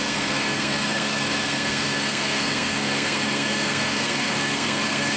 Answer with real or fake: fake